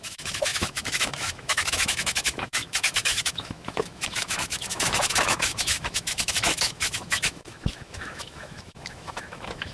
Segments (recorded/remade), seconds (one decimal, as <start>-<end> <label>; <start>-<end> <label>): 0.0-9.7 remade